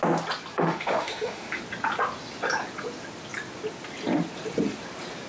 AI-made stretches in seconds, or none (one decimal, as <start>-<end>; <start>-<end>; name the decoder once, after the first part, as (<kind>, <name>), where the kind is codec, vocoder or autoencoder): 0.5-1.6 (autoencoder, DAC-VAE)